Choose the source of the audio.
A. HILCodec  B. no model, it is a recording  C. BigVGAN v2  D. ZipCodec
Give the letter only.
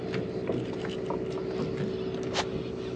B